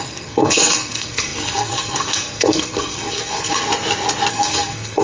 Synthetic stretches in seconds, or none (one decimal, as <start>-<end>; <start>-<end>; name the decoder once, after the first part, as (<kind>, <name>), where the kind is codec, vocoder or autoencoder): 0.0-3.6 (codec, SNAC); 4.3-5.0